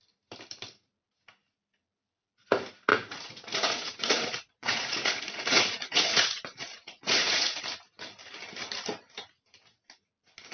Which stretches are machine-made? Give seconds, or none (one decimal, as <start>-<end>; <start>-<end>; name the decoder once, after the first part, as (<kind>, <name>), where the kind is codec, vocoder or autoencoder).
2.9-7.6 (vocoder, Vocos)